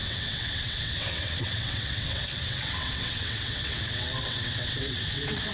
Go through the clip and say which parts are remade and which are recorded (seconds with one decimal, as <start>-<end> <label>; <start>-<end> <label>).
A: 0.0-5.5 remade